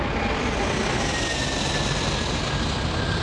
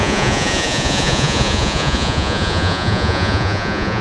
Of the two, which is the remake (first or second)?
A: second